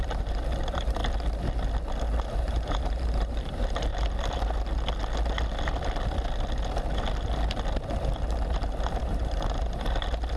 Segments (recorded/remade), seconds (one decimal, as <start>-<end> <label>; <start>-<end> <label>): 0.0-1.0 remade; 1.0-2.4 recorded; 2.4-3.9 remade; 3.9-9.0 recorded; 9.0-10.4 remade